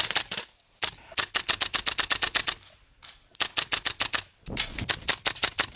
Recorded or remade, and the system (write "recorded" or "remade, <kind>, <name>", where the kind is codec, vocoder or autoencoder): remade, vocoder, BigVGAN v2